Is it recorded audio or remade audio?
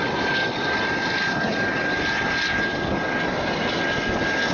recorded